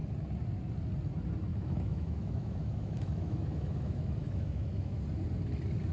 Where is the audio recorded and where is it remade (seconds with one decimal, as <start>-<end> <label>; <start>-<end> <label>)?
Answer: 0.0-1.5 recorded; 1.5-5.0 remade; 5.0-5.9 recorded